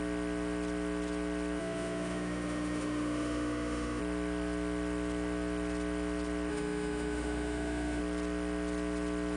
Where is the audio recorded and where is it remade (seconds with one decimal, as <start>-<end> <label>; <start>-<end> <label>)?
0.0-1.6 recorded; 1.6-4.0 remade; 4.0-6.5 recorded; 6.5-8.0 remade; 8.0-9.4 recorded